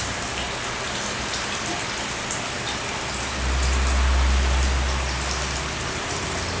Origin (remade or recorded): recorded